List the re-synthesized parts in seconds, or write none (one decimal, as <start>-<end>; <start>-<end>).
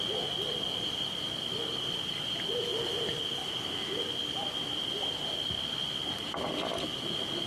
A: none